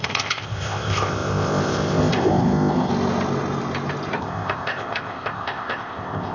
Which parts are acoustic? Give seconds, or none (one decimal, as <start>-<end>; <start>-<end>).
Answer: 2.9-4.2